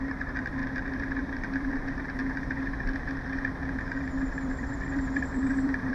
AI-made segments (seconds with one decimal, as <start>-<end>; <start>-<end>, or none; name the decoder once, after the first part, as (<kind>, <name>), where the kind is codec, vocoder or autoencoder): 0.0-0.6 (vocoder, BigVGAN v2); 1.2-2.2; 4.0-5.9